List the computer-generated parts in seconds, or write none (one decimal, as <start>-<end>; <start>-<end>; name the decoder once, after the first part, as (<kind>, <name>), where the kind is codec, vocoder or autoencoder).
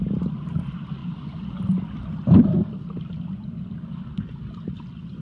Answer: 1.0-4.1 (vocoder, BigVGAN v2)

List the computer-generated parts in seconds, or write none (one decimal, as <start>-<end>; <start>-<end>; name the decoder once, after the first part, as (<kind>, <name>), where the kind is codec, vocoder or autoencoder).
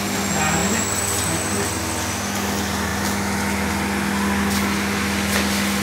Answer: none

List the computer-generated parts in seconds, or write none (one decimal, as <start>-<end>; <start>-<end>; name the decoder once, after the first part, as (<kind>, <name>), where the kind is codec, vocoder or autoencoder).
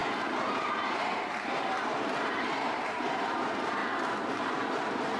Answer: 0.0-3.8 (vocoder, BigVGAN v2); 4.3-5.2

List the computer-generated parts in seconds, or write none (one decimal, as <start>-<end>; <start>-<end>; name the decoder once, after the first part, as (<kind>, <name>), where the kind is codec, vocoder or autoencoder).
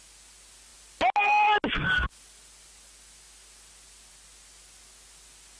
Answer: none